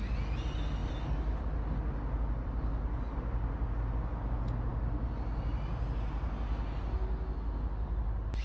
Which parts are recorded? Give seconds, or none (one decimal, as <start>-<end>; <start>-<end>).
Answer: 0.0-8.4